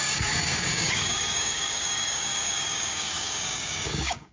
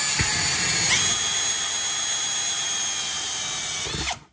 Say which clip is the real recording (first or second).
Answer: second